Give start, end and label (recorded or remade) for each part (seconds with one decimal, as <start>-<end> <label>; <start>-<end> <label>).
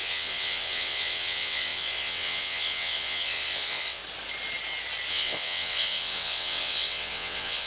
0.0-4.0 remade; 4.0-5.1 recorded; 5.1-7.7 remade